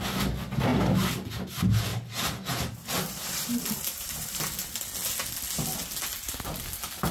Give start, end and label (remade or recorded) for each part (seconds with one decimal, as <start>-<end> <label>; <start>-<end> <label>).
0.0-1.9 recorded; 1.9-4.4 remade; 4.4-7.1 recorded